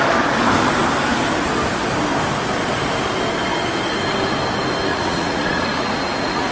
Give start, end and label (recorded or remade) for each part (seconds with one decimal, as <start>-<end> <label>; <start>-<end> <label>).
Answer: 0.0-4.9 recorded; 4.9-6.5 remade

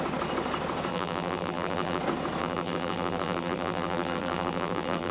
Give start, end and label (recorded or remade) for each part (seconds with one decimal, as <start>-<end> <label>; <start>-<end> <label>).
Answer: 0.0-0.9 recorded; 0.9-2.0 remade; 2.0-2.4 recorded; 2.4-5.1 remade

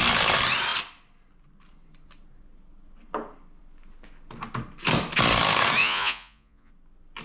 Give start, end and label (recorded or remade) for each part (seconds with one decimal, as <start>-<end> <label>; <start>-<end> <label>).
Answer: 0.0-5.8 recorded; 5.8-6.7 remade; 6.7-7.2 recorded

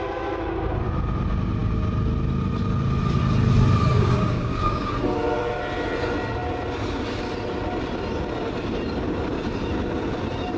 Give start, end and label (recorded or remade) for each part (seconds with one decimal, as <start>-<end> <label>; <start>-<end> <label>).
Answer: 0.0-3.9 recorded; 3.9-4.9 remade; 4.9-10.6 recorded

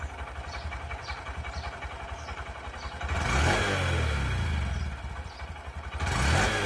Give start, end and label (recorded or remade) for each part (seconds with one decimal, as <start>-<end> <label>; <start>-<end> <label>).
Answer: 0.0-6.7 recorded

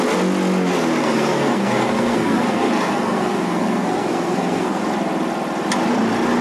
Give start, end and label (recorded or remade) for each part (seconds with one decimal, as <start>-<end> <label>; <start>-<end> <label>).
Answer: 0.0-1.0 recorded; 1.0-4.8 remade; 4.8-6.4 recorded